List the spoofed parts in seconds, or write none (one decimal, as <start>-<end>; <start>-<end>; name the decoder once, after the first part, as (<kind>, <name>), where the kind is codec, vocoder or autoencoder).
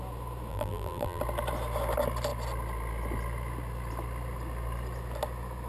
0.5-1.2 (vocoder, BigVGAN v2)